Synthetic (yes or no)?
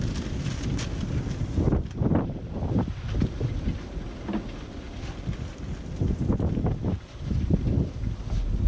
no